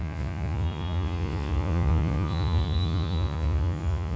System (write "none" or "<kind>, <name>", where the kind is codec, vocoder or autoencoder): vocoder, Vocos